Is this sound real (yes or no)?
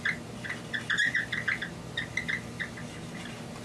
yes